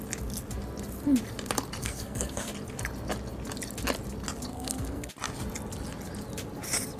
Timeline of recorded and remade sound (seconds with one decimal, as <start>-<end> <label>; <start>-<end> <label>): 0.0-1.8 recorded; 1.8-2.5 remade; 2.5-4.5 recorded; 4.5-5.1 remade; 5.1-7.0 recorded